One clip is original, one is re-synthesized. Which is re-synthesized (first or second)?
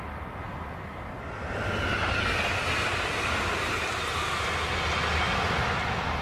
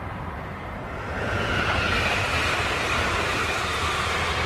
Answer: second